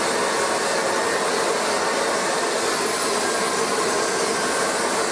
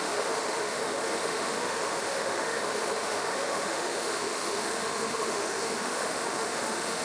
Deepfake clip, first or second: second